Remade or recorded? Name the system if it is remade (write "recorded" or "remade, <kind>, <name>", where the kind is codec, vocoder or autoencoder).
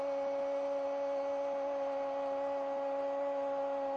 recorded